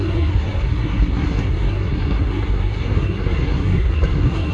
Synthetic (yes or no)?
yes